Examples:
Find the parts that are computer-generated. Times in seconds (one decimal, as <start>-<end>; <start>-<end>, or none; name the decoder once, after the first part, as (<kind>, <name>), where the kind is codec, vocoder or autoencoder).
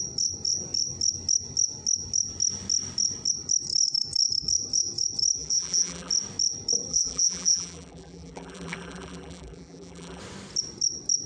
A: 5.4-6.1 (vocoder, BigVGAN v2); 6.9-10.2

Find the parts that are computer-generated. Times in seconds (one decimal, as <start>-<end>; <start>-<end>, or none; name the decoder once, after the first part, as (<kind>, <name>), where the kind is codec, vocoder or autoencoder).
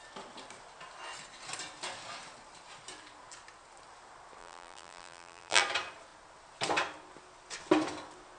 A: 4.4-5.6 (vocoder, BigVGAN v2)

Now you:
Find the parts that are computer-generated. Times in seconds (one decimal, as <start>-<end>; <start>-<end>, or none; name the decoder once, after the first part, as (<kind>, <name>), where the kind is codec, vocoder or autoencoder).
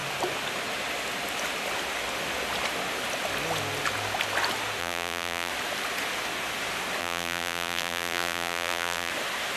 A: 4.8-5.5 (vocoder, BigVGAN v2); 7.0-9.1